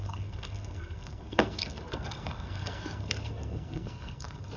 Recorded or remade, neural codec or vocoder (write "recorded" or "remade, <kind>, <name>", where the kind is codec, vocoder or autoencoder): remade, codec, SNAC